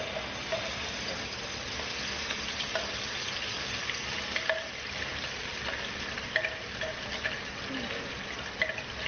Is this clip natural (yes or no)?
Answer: yes